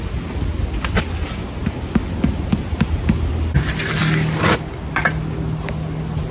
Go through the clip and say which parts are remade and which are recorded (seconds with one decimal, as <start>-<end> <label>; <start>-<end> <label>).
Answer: 0.0-6.3 recorded